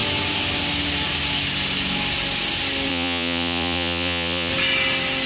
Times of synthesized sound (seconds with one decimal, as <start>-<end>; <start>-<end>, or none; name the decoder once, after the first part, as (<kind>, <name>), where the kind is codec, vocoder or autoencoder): 2.9-4.5 (vocoder, Vocos)